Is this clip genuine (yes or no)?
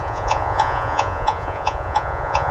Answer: no